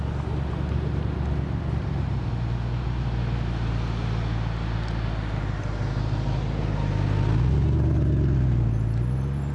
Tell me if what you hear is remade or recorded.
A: recorded